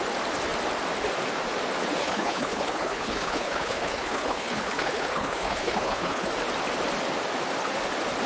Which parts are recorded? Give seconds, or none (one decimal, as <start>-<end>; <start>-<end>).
0.0-2.0; 6.3-8.3